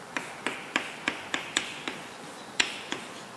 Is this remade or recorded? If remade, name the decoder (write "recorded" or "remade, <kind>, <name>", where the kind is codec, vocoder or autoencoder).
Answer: remade, vocoder, Vocos